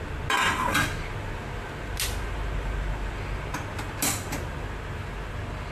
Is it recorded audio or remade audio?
recorded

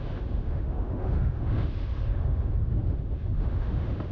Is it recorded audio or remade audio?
remade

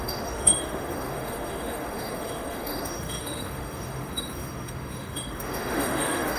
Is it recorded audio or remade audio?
remade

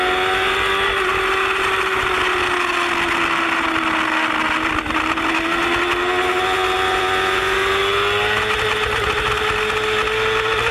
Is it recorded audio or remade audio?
recorded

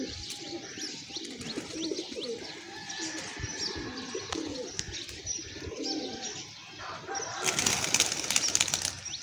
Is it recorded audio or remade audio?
recorded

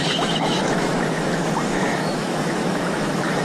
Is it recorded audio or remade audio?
remade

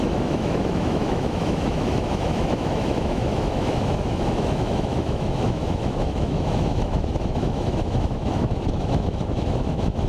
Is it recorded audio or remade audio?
remade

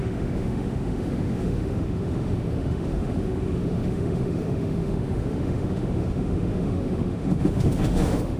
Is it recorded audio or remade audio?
remade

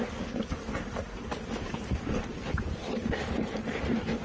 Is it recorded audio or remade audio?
recorded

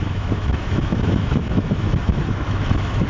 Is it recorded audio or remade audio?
remade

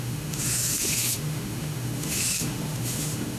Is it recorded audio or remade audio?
remade